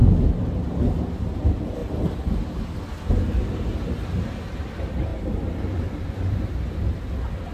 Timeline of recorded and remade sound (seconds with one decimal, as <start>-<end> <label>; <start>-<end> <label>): 0.0-7.5 recorded

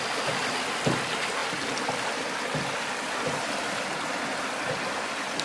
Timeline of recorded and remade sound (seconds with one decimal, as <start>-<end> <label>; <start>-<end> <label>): 0.0-5.4 recorded